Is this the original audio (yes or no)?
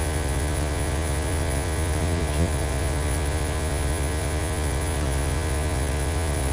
no